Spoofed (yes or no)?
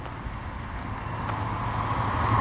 no